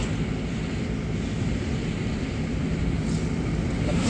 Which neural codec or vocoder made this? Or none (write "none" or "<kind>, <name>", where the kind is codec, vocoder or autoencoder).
none